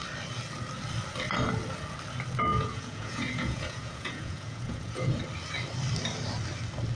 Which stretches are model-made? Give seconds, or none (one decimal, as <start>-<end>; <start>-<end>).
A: 2.5-5.2